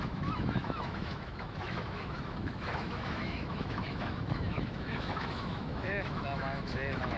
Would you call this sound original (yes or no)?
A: no